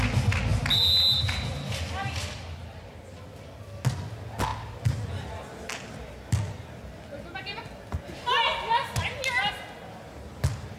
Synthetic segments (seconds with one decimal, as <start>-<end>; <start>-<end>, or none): none